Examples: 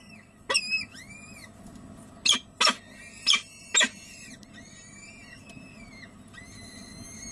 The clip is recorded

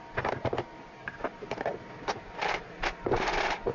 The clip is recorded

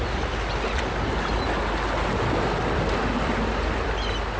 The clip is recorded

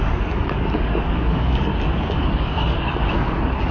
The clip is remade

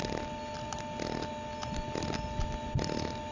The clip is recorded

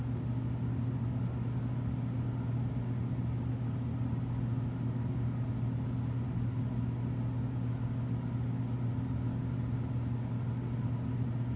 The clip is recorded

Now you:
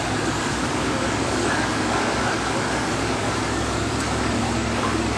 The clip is remade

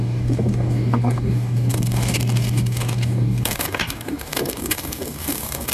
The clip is remade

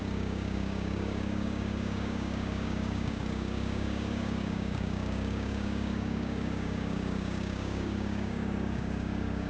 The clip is remade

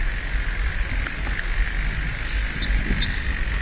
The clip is recorded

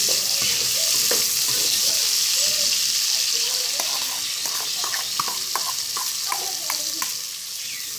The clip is recorded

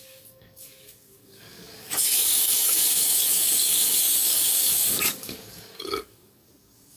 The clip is remade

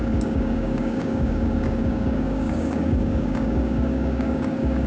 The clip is remade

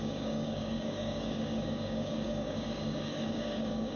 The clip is remade